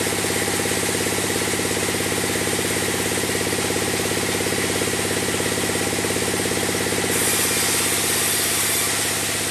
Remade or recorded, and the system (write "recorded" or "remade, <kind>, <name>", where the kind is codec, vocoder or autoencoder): recorded